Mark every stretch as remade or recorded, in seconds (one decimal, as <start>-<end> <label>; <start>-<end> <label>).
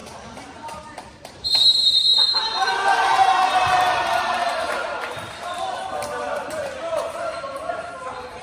0.0-1.2 recorded; 1.2-8.4 remade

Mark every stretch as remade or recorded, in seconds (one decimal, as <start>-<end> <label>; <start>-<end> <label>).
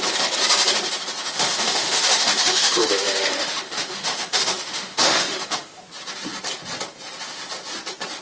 0.0-1.2 recorded; 1.2-5.8 remade; 5.8-8.2 recorded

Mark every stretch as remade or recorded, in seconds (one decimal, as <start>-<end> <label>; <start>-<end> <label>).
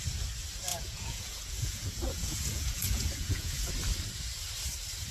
0.0-0.7 recorded; 0.7-3.7 remade; 3.7-5.1 recorded